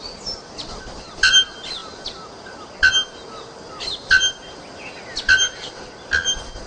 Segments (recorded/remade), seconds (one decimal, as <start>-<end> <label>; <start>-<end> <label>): 0.0-6.7 recorded